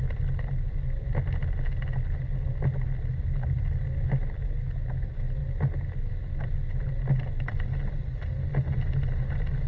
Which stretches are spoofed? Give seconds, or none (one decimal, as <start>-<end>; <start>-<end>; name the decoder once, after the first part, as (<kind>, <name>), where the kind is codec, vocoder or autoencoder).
none